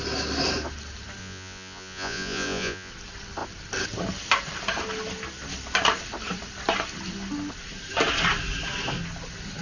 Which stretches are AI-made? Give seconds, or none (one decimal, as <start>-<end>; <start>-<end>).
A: 1.2-2.9